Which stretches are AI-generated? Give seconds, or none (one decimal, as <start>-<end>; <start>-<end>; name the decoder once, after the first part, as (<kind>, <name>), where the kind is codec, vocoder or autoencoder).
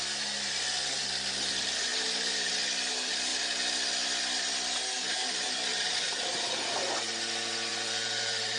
1.9-2.5 (vocoder, BigVGAN v2); 5.7-7.1; 7.7-8.6